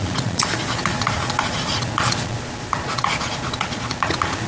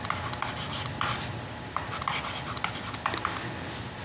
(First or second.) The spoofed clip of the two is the first